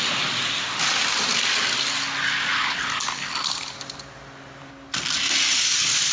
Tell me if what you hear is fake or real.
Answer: real